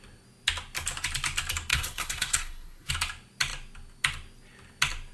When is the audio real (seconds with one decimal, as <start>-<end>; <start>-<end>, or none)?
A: 0.0-1.7; 2.9-5.1